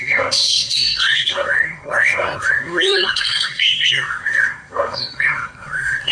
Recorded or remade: remade